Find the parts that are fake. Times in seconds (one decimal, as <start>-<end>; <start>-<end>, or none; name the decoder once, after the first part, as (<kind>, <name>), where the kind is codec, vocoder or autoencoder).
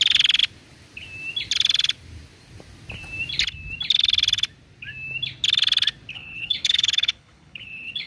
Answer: 6.1-8.1 (codec, HILCodec)